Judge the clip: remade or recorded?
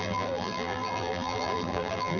remade